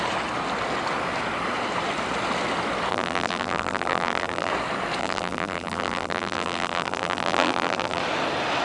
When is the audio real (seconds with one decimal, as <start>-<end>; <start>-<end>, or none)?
0.0-2.9; 4.5-5.0; 8.0-8.6